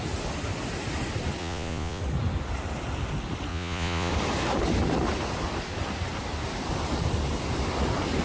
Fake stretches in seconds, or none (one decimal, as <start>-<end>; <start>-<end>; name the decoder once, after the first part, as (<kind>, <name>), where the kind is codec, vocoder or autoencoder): 1.4-2.0 (vocoder, Vocos); 3.5-4.1